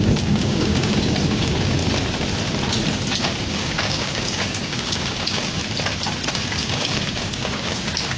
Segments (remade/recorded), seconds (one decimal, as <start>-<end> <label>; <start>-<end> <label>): 0.0-1.8 remade; 1.8-3.4 recorded; 3.4-5.6 remade; 5.6-6.3 recorded; 6.3-8.2 remade